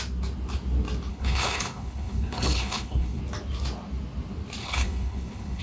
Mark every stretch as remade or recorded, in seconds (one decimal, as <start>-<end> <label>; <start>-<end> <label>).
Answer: 0.0-1.1 recorded; 1.1-3.2 remade; 3.2-4.6 recorded; 4.6-5.6 remade